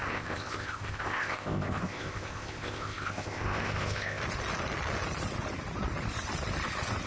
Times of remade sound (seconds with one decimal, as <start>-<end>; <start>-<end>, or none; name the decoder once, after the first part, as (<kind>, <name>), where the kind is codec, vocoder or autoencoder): 0.0-4.2 (codec, ZipCodec)